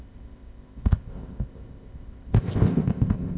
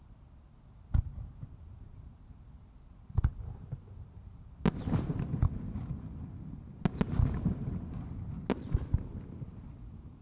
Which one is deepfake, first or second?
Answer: first